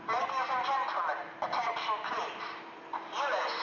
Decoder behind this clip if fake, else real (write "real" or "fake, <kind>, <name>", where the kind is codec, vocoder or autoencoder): real